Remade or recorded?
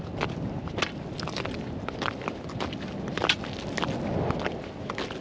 recorded